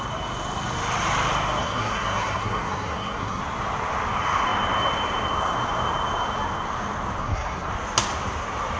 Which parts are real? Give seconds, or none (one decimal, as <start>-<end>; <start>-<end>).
0.0-1.6; 3.4-7.2; 7.7-8.8